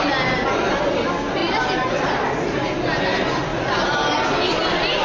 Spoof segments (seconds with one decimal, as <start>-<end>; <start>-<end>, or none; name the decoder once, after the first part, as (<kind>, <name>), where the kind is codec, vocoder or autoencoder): 1.4-1.9 (vocoder, BigVGAN v2)